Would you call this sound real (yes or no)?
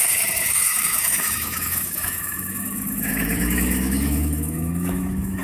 no